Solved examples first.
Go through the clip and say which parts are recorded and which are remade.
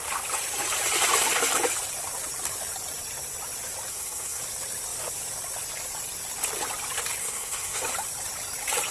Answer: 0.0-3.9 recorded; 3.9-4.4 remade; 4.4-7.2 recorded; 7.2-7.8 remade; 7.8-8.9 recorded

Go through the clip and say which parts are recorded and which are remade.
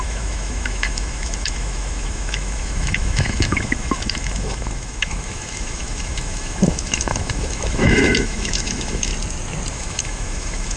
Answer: 0.0-9.1 remade; 9.1-9.7 recorded; 9.7-10.8 remade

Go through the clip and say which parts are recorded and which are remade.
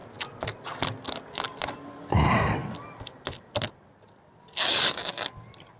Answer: 0.0-5.8 recorded